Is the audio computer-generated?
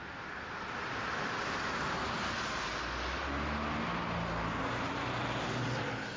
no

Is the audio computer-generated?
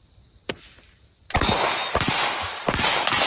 no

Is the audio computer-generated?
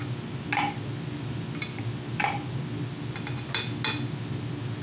no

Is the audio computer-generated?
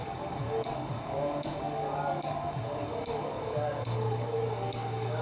yes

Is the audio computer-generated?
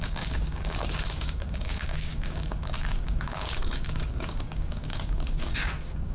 yes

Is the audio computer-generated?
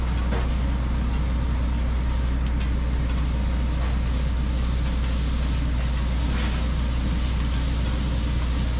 no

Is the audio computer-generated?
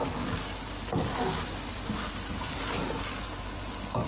no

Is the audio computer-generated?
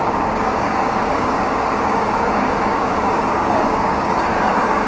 yes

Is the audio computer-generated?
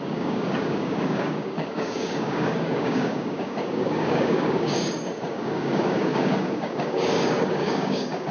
yes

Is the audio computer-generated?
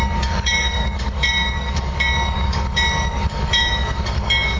yes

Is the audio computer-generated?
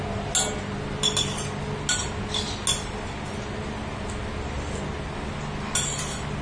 no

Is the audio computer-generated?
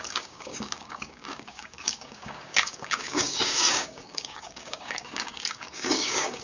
yes